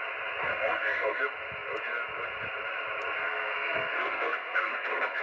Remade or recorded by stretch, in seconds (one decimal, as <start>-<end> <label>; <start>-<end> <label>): 0.0-0.5 recorded; 0.5-1.2 remade; 1.2-3.2 recorded; 3.2-5.2 remade